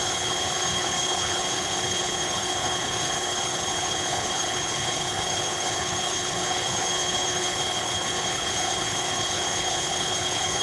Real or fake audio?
fake